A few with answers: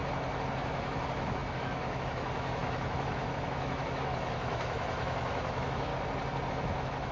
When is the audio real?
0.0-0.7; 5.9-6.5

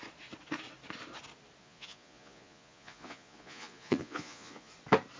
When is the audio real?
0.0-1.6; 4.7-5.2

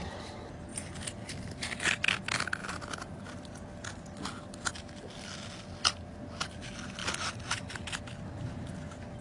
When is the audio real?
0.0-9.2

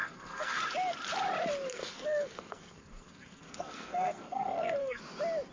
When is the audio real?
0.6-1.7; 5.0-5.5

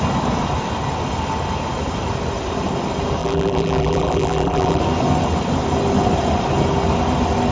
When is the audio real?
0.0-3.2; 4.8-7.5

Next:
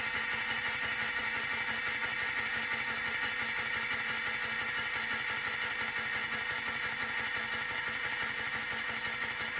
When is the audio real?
0.0-9.6

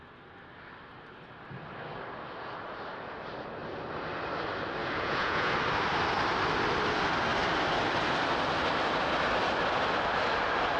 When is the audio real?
0.0-4.8; 5.5-10.8

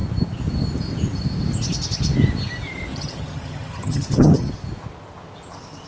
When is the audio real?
0.0-2.9; 4.5-5.9